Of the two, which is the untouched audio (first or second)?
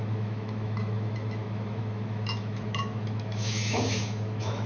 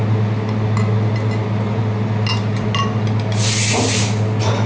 second